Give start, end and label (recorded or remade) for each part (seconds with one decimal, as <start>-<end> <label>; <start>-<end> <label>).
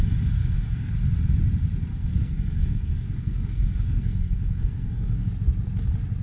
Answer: 0.0-0.4 recorded; 0.4-0.9 remade; 0.9-1.9 recorded; 1.9-5.3 remade; 5.3-6.2 recorded